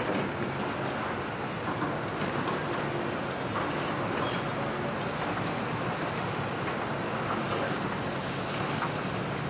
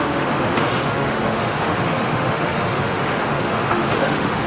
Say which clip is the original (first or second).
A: first